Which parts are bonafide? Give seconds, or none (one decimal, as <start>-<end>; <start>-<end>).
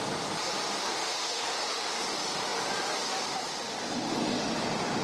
0.0-0.8; 2.0-5.0